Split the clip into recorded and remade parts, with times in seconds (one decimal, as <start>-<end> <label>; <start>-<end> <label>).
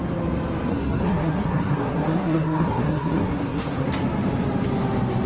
0.0-0.7 recorded; 0.7-3.9 remade; 3.9-5.3 recorded